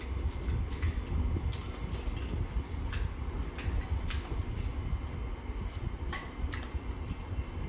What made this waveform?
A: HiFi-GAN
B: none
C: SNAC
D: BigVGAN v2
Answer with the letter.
B